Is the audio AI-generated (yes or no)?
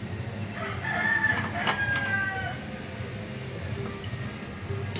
no